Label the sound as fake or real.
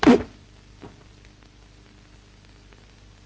fake